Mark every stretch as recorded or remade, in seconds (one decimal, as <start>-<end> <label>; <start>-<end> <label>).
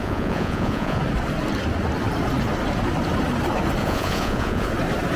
0.0-1.0 remade; 1.0-3.8 recorded; 3.8-4.7 remade; 4.7-5.2 recorded